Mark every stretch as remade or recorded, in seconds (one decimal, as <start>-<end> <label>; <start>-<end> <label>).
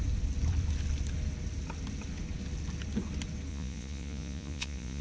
0.0-3.5 recorded; 3.5-5.0 remade